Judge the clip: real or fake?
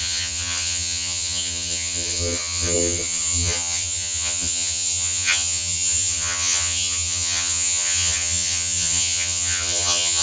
fake